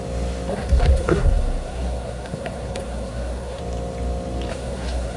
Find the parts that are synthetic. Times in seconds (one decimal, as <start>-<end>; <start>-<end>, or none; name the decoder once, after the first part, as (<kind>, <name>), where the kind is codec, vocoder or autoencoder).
0.5-3.6 (codec, SNAC); 4.5-5.2